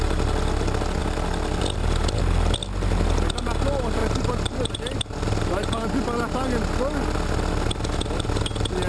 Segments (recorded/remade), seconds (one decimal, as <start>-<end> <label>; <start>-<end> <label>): 0.0-8.9 recorded